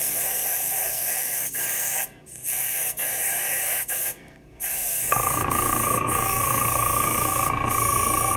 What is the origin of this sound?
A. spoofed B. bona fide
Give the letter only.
A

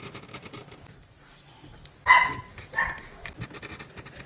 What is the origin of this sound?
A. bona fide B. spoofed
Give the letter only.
A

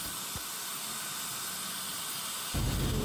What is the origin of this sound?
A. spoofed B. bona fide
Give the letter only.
B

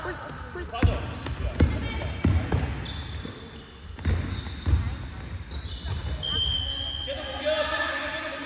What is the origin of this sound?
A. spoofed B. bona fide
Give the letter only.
B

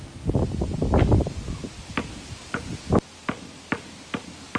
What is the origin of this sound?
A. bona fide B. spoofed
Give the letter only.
A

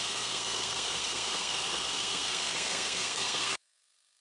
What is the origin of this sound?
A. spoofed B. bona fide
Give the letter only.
A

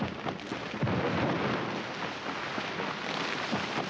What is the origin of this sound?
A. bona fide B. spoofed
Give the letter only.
A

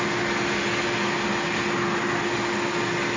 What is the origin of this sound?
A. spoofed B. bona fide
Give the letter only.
B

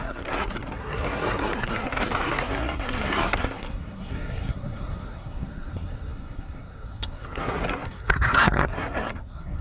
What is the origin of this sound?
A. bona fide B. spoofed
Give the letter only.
B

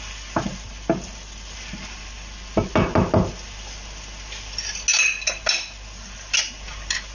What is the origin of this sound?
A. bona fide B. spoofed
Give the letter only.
A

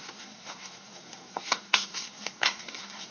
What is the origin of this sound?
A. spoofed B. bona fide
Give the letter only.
A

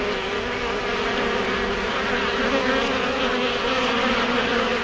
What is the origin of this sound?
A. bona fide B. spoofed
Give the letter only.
A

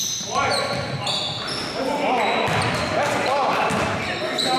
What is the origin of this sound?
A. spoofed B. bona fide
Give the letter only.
B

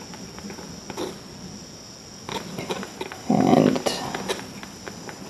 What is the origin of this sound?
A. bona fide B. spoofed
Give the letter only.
A